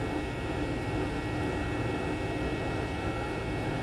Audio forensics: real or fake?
real